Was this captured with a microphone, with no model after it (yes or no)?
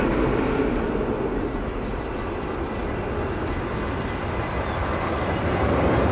yes